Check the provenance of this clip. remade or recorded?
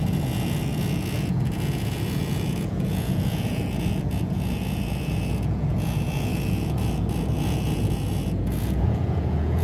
remade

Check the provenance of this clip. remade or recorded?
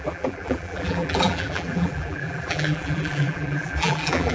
remade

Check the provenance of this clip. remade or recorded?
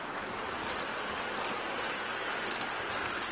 recorded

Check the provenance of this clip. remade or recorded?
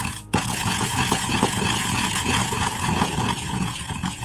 remade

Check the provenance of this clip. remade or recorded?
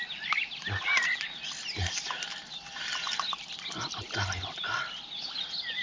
recorded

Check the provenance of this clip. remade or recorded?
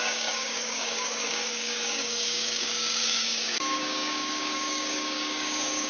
remade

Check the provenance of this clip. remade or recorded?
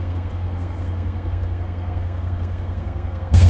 remade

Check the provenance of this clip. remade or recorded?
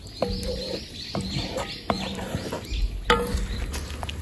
recorded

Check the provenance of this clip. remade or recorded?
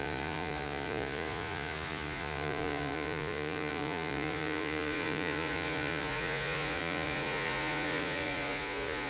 remade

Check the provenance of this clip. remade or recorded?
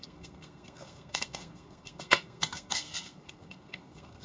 remade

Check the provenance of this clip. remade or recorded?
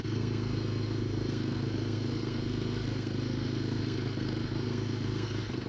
remade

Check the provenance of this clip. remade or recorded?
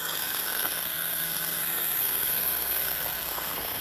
remade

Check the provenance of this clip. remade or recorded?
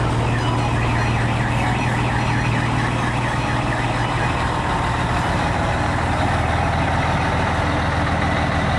recorded